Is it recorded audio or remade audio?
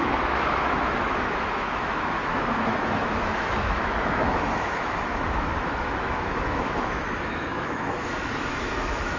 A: remade